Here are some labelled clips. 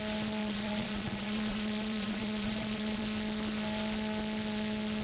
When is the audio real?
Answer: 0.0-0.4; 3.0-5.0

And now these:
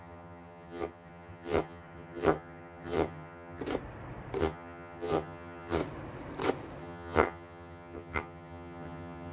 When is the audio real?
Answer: 3.6-4.4; 5.8-6.8

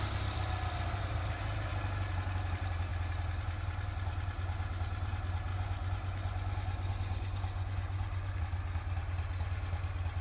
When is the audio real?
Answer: 0.0-5.5; 8.4-10.2

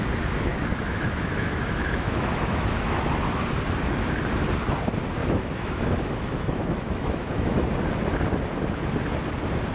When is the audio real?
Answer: 0.0-0.5; 3.3-5.2; 7.7-9.7